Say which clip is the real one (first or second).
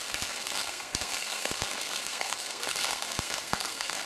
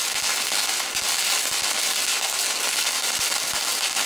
second